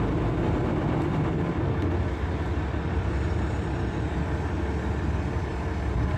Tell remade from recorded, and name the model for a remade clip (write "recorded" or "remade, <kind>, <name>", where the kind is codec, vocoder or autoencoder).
recorded